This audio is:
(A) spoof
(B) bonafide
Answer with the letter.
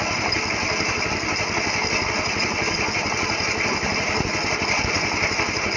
B